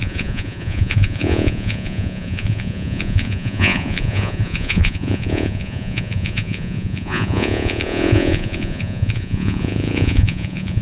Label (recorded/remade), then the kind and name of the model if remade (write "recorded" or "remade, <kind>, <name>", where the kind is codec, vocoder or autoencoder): remade, vocoder, Vocos